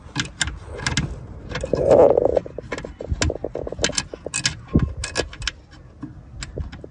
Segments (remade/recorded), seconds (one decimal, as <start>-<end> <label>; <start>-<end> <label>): 0.0-6.9 recorded